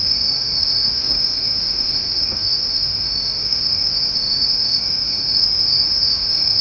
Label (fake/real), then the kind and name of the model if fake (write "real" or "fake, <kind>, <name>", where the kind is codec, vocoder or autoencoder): fake, autoencoder, DAC-VAE